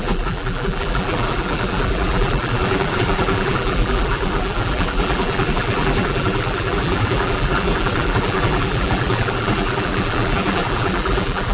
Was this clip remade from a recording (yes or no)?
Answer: yes